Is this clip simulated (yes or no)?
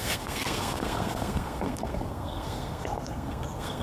yes